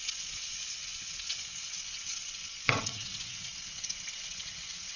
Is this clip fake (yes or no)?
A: yes